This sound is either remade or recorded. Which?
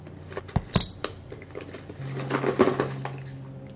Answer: recorded